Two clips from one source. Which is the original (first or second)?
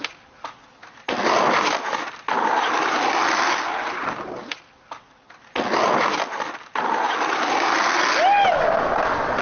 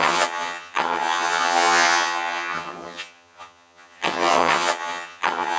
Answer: first